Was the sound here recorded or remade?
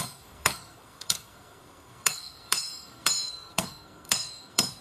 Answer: remade